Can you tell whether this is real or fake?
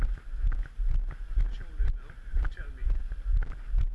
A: real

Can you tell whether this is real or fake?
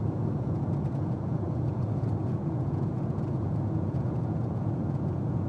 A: fake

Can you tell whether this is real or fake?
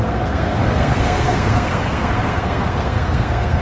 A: fake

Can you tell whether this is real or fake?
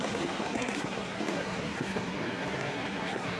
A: fake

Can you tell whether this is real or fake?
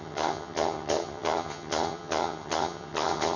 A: fake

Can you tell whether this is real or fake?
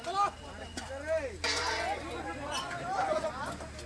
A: real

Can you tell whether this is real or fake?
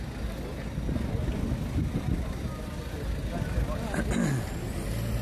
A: real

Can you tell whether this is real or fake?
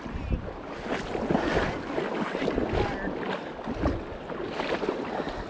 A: real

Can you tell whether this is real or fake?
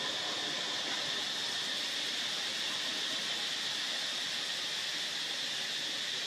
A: real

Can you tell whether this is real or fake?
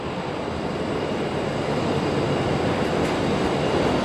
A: fake